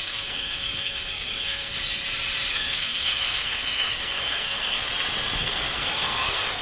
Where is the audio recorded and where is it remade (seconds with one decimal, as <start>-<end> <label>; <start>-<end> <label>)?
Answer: 0.0-1.7 remade; 1.7-2.5 recorded; 2.5-4.8 remade; 4.8-5.4 recorded; 5.4-6.6 remade